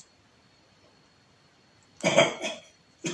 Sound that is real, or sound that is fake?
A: real